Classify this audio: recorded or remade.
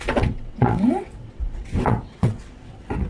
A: remade